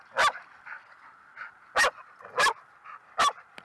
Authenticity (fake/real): real